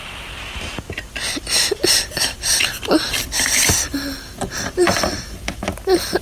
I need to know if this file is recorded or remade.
remade